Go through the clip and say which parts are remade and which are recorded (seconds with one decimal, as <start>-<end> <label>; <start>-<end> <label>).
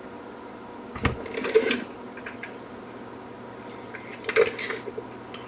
0.0-5.5 recorded